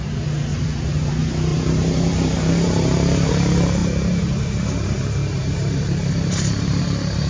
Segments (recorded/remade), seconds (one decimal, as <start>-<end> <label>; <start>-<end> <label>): 0.0-0.5 recorded; 0.5-1.1 remade; 1.1-1.5 recorded; 1.5-3.3 remade; 3.3-3.8 recorded; 3.8-6.8 remade; 6.8-7.3 recorded